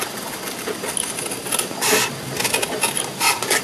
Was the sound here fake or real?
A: real